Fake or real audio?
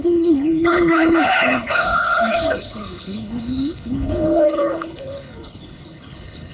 fake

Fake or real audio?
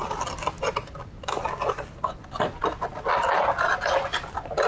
real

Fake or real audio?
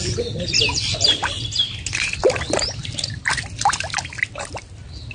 real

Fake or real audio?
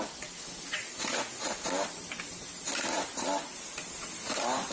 real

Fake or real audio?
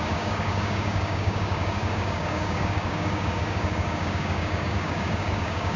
fake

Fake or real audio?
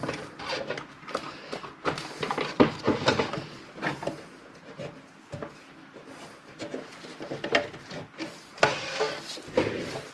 real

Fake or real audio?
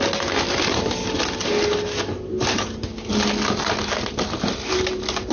real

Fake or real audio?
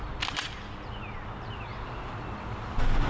real